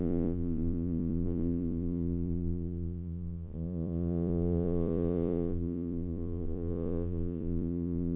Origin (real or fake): fake